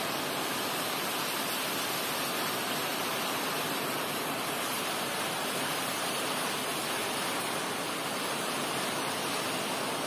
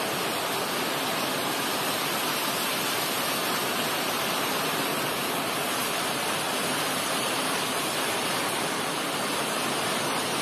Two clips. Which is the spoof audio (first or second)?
second